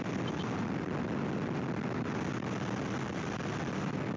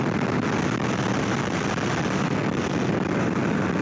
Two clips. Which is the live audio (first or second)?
first